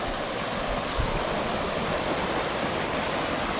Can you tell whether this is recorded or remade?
recorded